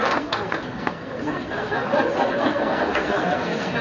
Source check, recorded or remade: remade